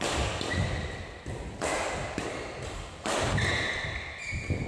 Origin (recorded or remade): recorded